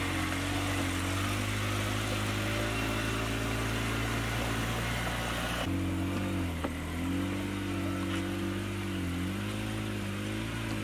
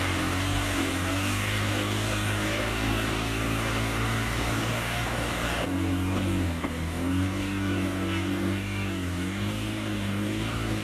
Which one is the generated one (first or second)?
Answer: second